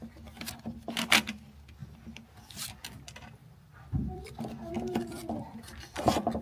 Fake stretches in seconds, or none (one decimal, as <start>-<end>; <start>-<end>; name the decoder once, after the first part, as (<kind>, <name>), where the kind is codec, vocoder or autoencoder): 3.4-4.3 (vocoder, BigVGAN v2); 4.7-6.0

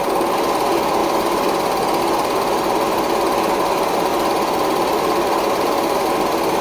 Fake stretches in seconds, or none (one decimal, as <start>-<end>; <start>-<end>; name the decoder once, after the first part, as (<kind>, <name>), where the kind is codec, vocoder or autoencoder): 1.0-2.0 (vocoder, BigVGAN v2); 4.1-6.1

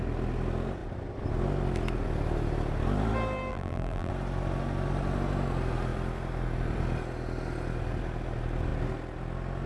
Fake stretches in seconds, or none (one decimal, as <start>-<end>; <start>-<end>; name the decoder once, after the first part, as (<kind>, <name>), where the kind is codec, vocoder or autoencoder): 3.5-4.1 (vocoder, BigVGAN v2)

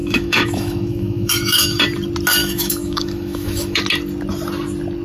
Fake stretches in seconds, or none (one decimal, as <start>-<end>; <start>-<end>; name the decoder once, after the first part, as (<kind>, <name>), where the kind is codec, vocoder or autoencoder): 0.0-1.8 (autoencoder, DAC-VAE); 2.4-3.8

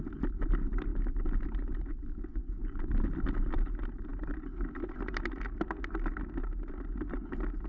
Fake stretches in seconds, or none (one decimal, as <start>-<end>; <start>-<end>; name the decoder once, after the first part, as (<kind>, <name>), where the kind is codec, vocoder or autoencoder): 2.3-2.9 (vocoder, Vocos)

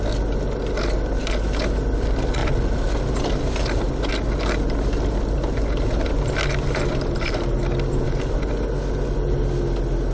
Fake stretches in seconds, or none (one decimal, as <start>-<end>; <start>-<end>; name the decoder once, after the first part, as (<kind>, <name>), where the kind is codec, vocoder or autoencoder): none

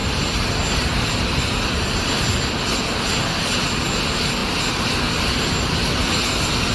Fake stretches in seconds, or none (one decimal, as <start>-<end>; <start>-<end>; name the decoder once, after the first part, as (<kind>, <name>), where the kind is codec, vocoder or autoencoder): none

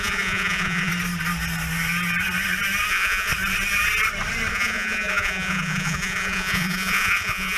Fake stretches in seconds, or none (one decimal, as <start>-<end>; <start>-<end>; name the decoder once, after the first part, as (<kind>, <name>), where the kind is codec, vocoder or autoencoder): 0.0-0.9 (vocoder, Vocos); 2.9-3.3; 4.5-7.6